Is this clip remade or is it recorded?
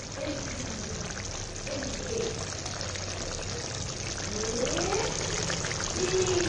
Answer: recorded